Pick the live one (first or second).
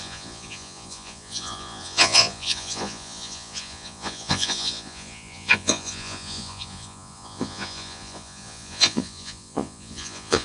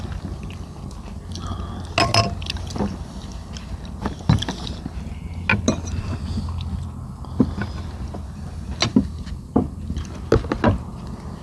second